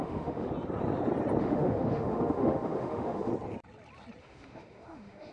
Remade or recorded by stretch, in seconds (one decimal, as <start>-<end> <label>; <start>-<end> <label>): 0.0-0.5 remade; 0.5-1.4 recorded; 1.4-3.3 remade; 3.3-4.2 recorded; 4.2-5.3 remade